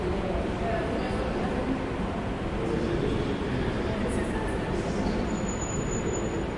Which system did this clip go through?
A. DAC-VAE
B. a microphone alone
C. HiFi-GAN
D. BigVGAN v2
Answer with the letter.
B